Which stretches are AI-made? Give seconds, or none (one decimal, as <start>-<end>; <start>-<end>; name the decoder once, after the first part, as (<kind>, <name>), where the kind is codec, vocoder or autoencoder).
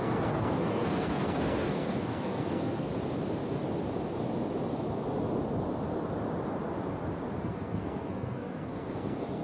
0.0-2.9 (codec, SNAC); 7.4-9.4